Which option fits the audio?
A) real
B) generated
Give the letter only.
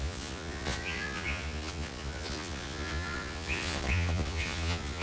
B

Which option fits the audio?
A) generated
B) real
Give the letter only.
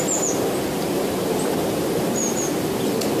B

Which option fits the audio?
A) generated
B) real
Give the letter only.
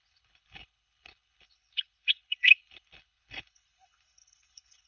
A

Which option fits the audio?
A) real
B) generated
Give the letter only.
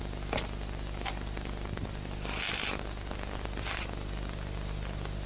A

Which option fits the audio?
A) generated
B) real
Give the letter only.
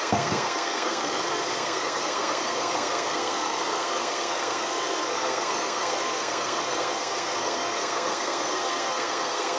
A